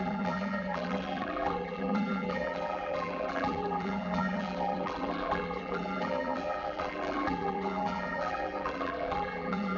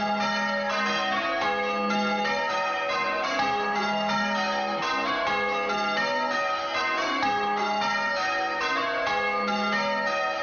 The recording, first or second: second